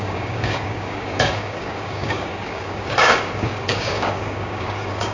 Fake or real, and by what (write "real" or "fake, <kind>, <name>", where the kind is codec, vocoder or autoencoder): fake, codec, DAC